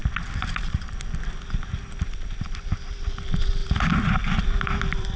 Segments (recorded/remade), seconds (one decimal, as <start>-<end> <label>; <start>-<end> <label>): 0.0-5.2 remade